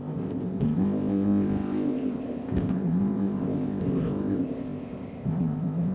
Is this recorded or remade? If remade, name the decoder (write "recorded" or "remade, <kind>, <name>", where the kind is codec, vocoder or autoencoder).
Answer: remade, codec, ZipCodec